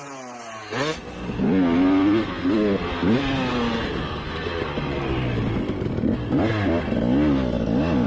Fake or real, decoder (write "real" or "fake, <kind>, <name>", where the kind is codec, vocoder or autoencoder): real